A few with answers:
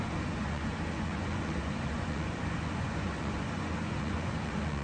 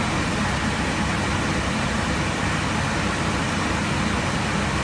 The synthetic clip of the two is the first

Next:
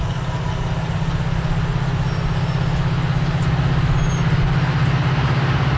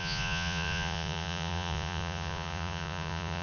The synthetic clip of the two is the second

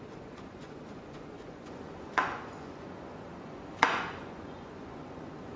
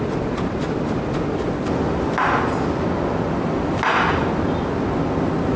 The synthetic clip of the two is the first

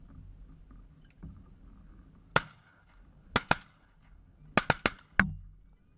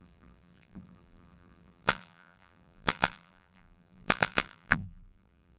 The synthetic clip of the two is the second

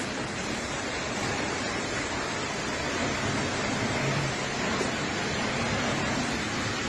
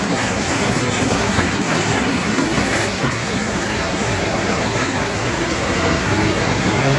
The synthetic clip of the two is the second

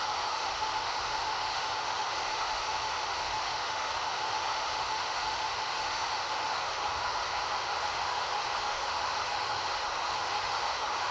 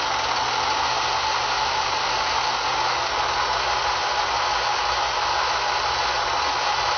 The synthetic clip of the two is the first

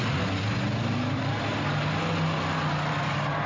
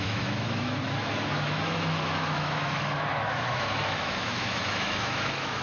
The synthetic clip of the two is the second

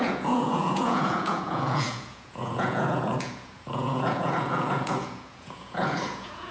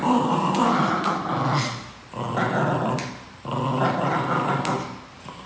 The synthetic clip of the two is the first